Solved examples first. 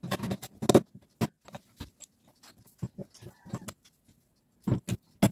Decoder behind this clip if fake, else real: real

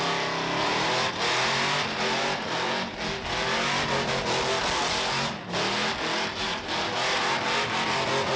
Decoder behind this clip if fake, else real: real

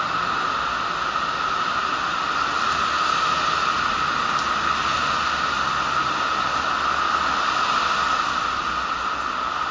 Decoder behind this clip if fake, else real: real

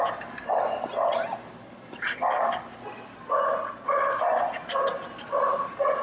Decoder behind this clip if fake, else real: real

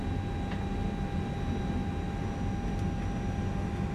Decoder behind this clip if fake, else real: real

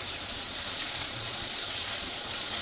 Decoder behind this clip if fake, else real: fake, vocoder, Vocos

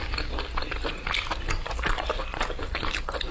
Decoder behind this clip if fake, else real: real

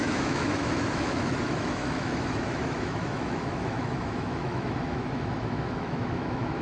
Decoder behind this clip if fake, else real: fake, autoencoder, DAC-VAE